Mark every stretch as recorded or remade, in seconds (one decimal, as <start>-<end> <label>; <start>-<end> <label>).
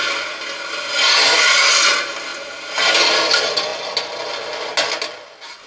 0.0-5.7 recorded